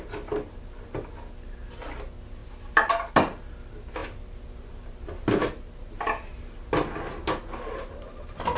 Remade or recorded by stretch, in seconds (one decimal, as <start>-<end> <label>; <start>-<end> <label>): 0.0-2.4 recorded; 2.4-3.1 remade; 3.1-8.6 recorded